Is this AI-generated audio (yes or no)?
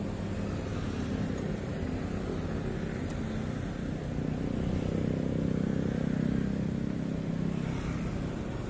no